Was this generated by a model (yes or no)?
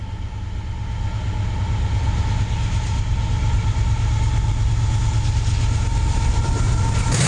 no